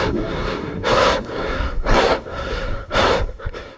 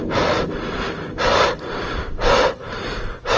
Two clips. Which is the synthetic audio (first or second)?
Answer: first